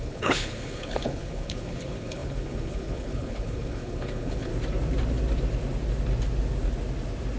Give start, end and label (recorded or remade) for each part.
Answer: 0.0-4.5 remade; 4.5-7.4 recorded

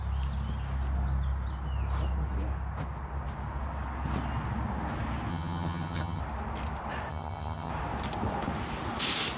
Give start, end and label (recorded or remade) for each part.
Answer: 0.0-5.3 recorded; 5.3-6.2 remade; 6.2-7.1 recorded; 7.1-7.7 remade; 7.7-9.4 recorded

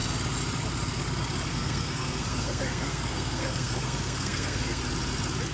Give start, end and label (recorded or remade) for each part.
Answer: 0.0-1.5 recorded; 1.5-4.8 remade; 4.8-5.5 recorded

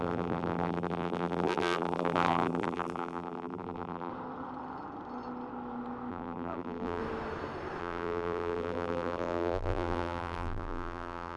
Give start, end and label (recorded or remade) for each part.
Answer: 0.0-4.1 remade; 4.1-6.1 recorded; 6.1-7.0 remade; 7.0-7.8 recorded; 7.8-11.4 remade

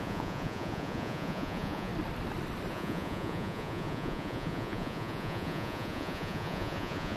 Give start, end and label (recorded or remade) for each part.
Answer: 0.0-1.9 remade; 1.9-2.7 recorded; 2.7-7.2 remade

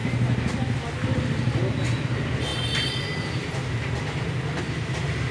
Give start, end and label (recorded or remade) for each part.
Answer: 0.0-5.3 recorded

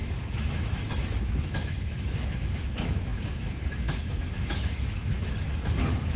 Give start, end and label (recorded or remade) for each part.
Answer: 0.0-6.2 remade

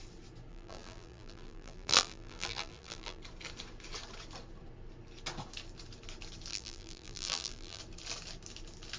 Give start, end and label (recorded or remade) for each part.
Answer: 0.0-0.5 recorded; 0.5-3.2 remade; 3.2-6.5 recorded; 6.5-7.8 remade; 7.8-9.0 recorded